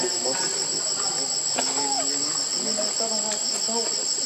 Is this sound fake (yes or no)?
no